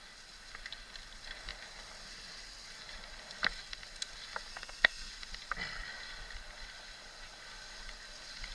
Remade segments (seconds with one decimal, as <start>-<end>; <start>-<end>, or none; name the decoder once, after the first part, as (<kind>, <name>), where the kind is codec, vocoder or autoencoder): 4.5-5.1 (codec, SNAC)